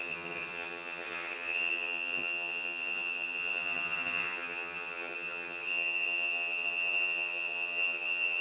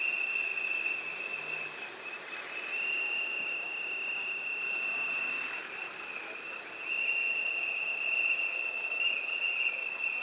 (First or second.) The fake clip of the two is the first